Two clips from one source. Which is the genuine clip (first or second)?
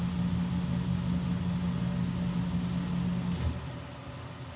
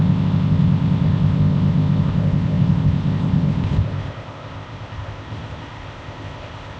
first